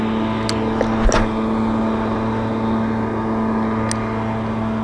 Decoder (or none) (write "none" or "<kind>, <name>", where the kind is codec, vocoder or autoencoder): none